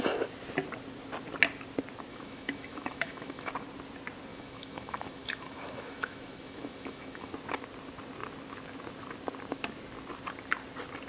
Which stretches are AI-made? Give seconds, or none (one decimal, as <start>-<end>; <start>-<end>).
2.1-3.5; 4.3-7.3

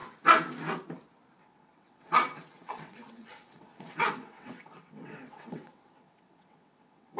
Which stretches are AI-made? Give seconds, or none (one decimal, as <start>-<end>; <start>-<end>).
1.4-7.2